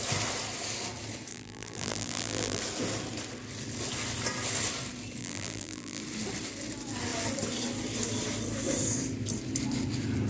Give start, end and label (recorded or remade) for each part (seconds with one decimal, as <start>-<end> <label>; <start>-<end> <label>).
0.0-1.3 recorded; 1.3-2.6 remade; 2.6-5.2 recorded; 5.2-6.0 remade; 6.0-10.3 recorded